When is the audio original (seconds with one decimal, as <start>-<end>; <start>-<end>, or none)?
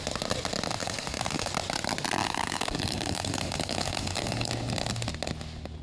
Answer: 0.0-0.8; 1.5-2.2; 4.5-5.8